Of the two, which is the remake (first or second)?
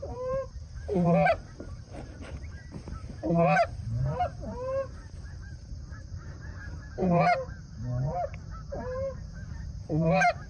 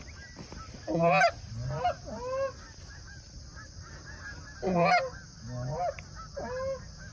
first